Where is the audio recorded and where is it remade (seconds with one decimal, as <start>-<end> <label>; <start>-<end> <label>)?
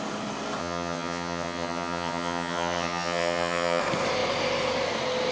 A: 0.0-0.6 recorded; 0.6-3.8 remade; 3.8-5.3 recorded